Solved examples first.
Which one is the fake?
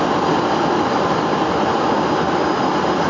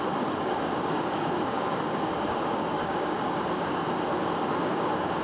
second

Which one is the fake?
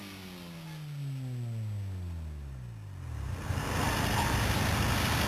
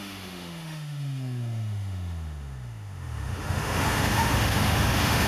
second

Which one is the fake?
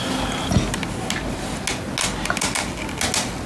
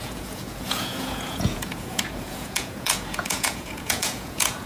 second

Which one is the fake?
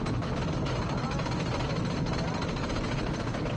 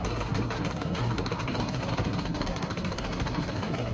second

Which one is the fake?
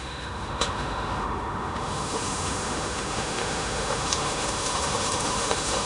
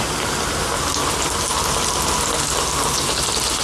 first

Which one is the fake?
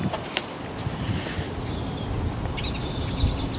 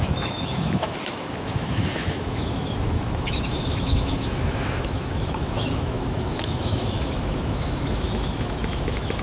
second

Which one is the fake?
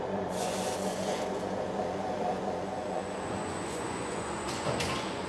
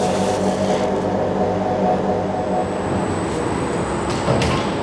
first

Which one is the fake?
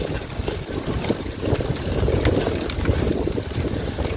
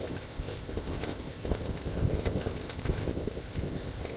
second